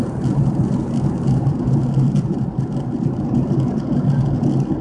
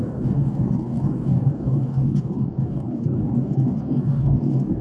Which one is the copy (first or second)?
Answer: second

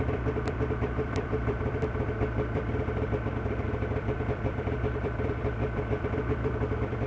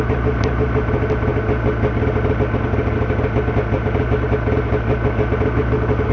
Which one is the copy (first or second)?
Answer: first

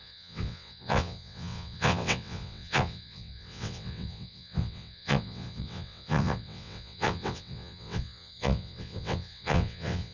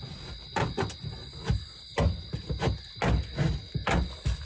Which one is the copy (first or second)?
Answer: first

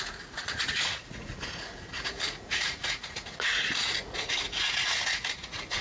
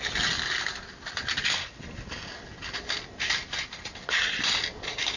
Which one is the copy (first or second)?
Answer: first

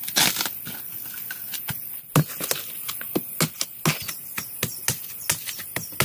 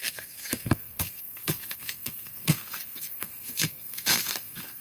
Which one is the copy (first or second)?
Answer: second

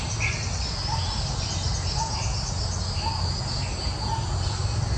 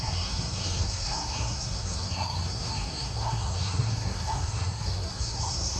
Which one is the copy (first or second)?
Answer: second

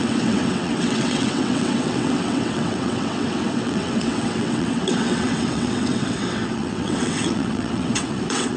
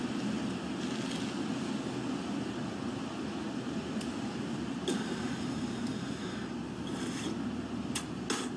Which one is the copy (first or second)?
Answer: first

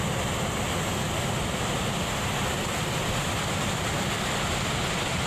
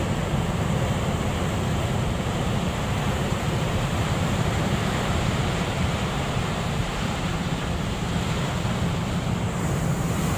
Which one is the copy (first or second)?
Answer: second